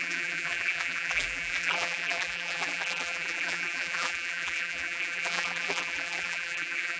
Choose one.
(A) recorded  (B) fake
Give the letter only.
B